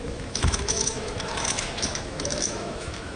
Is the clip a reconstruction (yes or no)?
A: yes